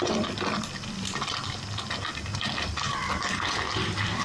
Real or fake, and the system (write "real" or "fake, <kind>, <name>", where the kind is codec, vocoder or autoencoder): real